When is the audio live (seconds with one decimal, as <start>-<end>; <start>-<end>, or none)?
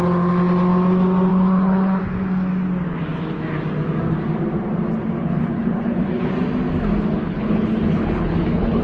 0.0-1.3; 2.0-5.2; 6.3-7.1